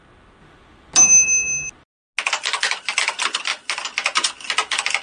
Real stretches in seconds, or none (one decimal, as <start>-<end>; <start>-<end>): 0.0-5.0